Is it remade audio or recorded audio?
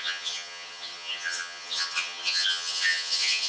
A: remade